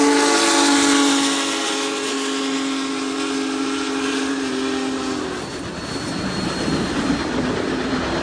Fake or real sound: real